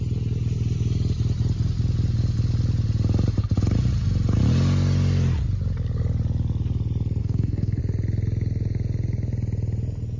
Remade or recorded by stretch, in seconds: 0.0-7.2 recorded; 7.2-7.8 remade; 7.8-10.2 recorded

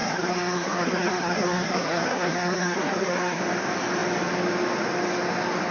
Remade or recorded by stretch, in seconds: 0.0-3.4 remade; 3.4-5.7 recorded

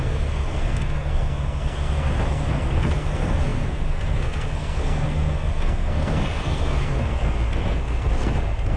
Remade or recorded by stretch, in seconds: 0.0-8.8 remade

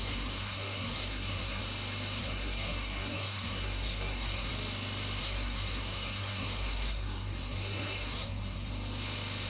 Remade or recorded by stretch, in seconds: 0.0-1.6 remade; 1.6-2.2 recorded; 2.2-4.5 remade; 4.5-5.2 recorded; 5.2-8.7 remade; 8.7-9.5 recorded